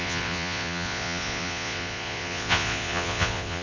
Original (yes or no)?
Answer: no